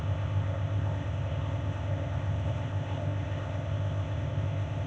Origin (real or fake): fake